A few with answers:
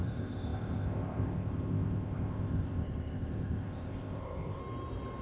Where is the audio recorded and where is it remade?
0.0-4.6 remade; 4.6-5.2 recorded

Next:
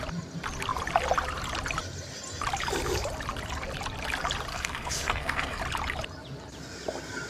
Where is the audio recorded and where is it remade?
0.0-4.5 recorded; 4.5-5.6 remade; 5.6-7.3 recorded

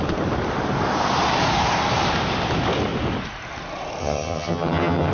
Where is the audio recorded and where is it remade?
0.0-4.0 recorded; 4.0-5.1 remade

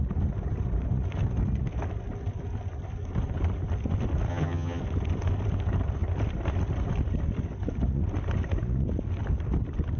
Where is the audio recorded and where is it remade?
0.0-4.3 recorded; 4.3-4.8 remade; 4.8-10.0 recorded